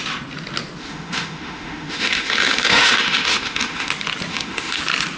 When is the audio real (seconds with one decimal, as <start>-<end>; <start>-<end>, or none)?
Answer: 0.0-0.8; 3.9-4.3; 4.8-5.2